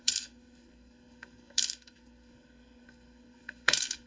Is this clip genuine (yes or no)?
no